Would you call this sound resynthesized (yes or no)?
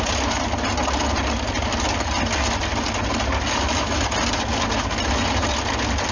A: no